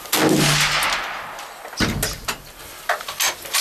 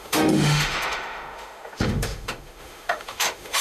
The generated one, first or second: second